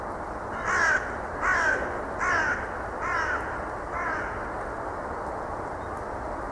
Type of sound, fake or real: real